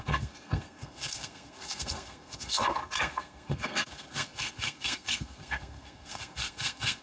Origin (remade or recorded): remade